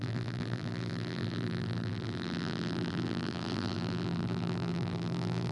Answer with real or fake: fake